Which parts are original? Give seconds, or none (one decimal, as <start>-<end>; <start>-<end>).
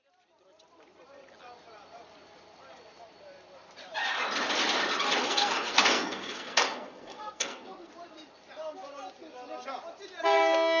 0.0-5.2; 7.9-10.8